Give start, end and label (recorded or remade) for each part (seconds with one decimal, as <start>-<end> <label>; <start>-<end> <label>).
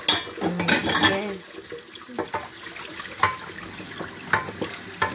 0.0-0.8 recorded; 0.8-3.2 remade; 3.2-5.1 recorded